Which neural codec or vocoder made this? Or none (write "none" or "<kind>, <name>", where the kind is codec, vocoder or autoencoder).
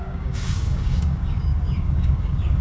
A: codec, DAC